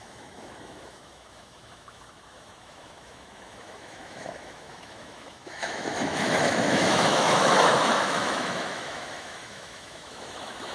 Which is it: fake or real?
fake